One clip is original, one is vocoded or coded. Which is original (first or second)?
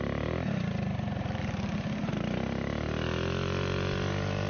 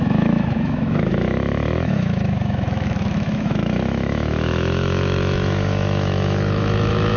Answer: first